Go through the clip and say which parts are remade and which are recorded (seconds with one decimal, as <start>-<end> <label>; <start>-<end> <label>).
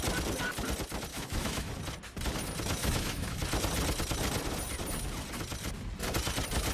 0.0-1.1 recorded; 1.1-1.7 remade; 1.7-2.8 recorded; 2.8-3.4 remade; 3.4-6.7 recorded